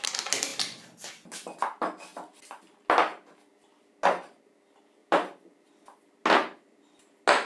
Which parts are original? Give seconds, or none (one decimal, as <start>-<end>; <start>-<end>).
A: 0.0-5.0; 5.7-7.5